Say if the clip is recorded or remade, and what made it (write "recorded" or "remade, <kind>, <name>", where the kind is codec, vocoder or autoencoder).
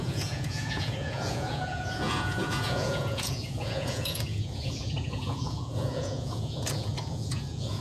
remade, vocoder, Vocos